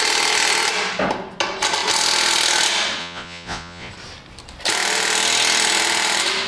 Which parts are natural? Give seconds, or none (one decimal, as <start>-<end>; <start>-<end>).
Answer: 0.0-3.0; 3.9-6.5